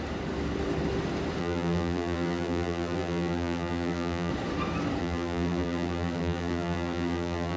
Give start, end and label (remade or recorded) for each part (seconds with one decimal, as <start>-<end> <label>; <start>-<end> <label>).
0.0-1.4 recorded; 1.4-4.3 remade; 4.3-5.0 recorded; 5.0-7.6 remade

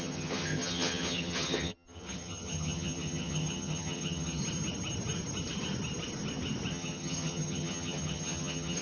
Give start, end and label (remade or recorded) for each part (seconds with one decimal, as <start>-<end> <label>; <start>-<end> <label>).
0.0-4.4 remade; 4.4-6.7 recorded; 6.7-8.8 remade

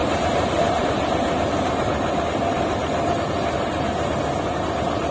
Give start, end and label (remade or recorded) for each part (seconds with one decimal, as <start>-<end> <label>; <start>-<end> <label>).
0.0-5.1 recorded

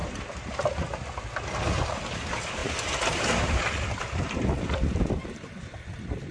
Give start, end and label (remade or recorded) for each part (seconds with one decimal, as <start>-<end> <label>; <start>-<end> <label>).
0.0-6.3 recorded

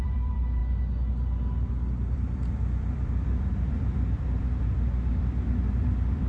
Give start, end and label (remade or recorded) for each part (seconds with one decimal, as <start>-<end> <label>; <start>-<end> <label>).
0.0-6.3 remade

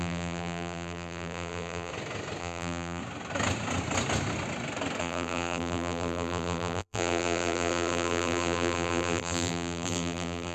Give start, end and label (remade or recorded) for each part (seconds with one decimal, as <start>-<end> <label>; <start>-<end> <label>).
0.0-1.9 remade; 1.9-2.4 recorded; 2.4-3.0 remade; 3.0-5.0 recorded; 5.0-10.5 remade